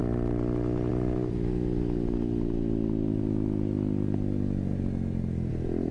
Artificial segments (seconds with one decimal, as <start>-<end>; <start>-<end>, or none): none